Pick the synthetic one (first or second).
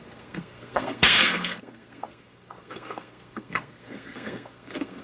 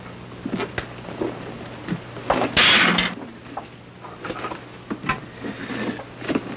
first